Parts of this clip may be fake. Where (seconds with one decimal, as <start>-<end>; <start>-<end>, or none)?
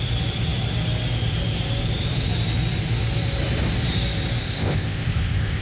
4.4-5.6